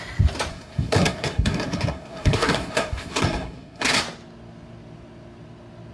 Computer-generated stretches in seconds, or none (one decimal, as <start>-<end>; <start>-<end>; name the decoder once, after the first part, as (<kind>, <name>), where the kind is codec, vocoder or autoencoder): 0.5-4.0 (codec, SNAC)